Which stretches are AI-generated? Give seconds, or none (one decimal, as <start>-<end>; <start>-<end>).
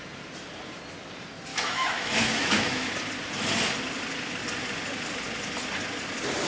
1.5-2.9